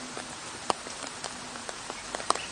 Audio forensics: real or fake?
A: fake